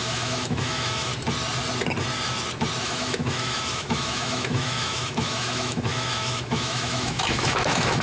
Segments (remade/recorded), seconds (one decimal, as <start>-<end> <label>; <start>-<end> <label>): 0.0-1.1 remade; 1.1-2.8 recorded; 2.8-8.0 remade